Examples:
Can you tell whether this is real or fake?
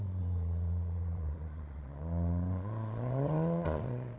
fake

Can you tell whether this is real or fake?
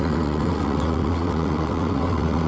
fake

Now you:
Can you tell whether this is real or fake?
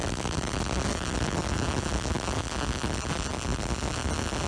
real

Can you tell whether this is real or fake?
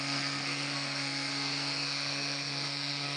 fake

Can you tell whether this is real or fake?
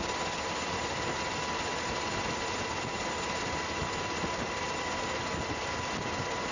real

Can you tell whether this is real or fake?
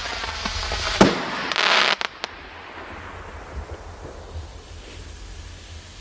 real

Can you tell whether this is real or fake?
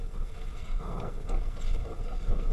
fake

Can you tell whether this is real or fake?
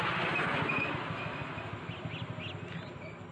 real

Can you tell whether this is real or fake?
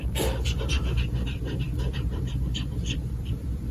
fake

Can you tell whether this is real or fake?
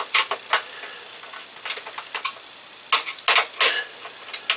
real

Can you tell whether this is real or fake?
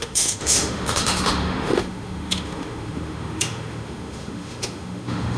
fake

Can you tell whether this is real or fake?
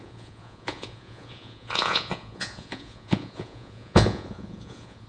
fake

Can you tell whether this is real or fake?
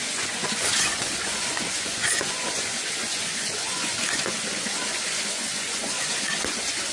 fake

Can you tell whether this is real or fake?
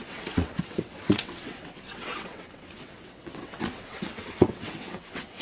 fake